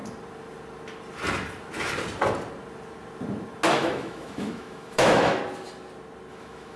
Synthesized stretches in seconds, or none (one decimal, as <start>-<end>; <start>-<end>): 3.7-5.4; 6.3-6.8